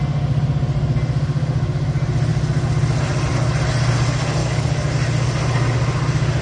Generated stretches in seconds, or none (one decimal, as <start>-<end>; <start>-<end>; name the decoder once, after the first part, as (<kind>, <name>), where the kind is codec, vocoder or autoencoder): 4.4-4.9 (codec, DAC)